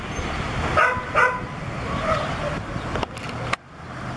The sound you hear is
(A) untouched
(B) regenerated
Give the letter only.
A